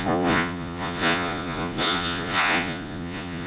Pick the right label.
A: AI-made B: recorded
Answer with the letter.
A